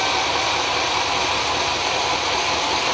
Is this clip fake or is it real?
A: real